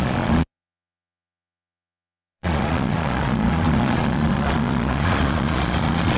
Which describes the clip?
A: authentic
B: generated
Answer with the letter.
B